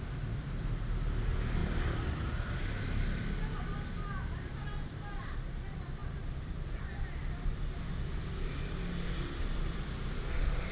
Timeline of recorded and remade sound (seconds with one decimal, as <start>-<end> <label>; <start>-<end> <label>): 0.0-10.7 recorded